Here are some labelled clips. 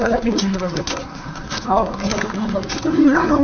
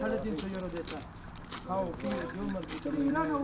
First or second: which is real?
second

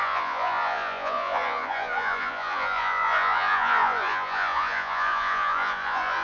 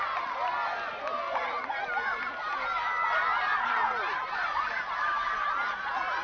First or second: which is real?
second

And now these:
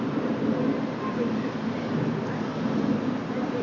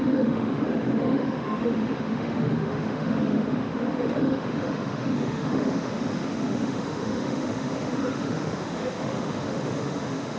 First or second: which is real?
first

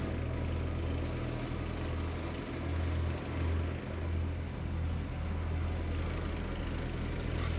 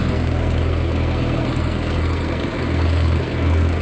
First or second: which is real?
first